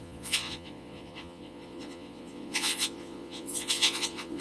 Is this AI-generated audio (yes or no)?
yes